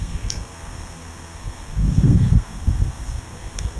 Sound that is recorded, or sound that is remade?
remade